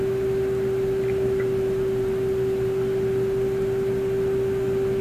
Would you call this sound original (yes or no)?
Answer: yes